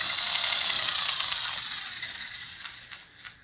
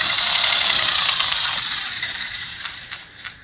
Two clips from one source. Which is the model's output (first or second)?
second